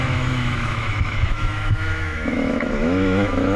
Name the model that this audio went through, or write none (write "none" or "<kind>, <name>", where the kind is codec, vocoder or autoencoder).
autoencoder, DAC-VAE